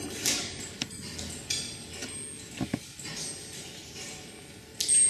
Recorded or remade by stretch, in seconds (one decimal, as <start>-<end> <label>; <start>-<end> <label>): 0.0-5.1 recorded